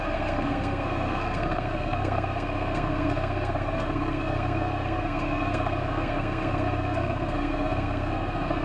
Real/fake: fake